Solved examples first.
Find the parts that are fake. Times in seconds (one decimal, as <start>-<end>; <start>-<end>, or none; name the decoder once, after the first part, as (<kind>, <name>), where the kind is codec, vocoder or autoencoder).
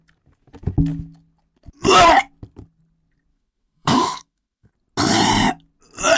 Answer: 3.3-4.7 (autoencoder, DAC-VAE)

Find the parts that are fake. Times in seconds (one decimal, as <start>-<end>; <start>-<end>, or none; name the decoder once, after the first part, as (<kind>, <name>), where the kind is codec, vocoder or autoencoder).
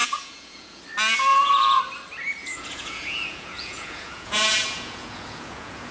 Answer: 0.0-0.8 (vocoder, Vocos); 1.3-1.8; 2.4-5.9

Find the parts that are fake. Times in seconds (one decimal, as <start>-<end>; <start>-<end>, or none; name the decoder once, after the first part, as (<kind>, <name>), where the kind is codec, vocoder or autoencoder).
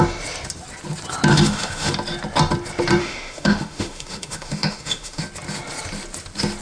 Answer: 1.3-1.9 (autoencoder, DAC-VAE); 3.0-5.2